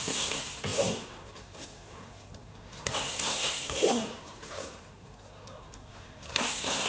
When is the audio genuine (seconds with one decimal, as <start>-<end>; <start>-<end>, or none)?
none